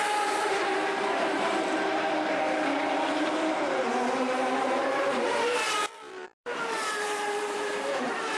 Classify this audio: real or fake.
fake